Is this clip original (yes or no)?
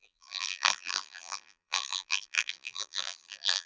no